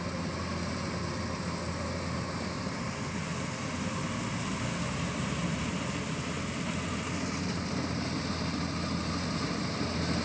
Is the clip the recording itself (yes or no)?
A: yes